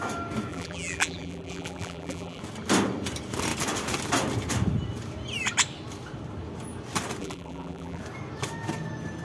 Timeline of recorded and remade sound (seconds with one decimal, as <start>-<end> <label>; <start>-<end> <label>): 0.0-0.5 recorded; 0.5-2.4 remade; 2.4-7.2 recorded; 7.2-8.0 remade; 8.0-9.2 recorded